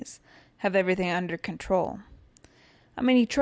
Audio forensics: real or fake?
real